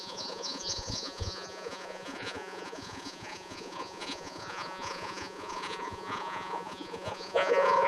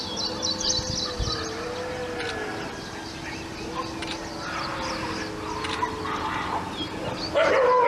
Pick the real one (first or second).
second